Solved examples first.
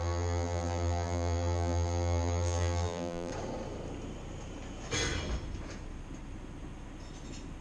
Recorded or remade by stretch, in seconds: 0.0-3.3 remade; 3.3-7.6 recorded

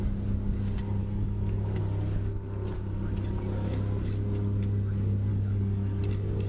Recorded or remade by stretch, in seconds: 0.0-1.0 recorded; 1.0-1.8 remade; 1.8-5.3 recorded; 5.3-6.0 remade; 6.0-6.5 recorded

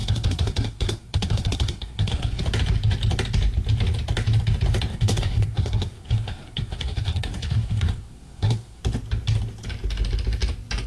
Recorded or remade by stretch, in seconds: 0.0-2.4 remade; 2.4-4.9 recorded; 4.9-8.8 remade; 8.8-10.9 recorded

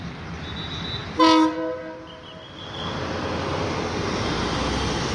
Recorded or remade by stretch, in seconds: 0.0-5.1 recorded